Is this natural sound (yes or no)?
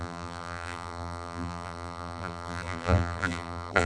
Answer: no